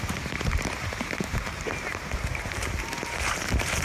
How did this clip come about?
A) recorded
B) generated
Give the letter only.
B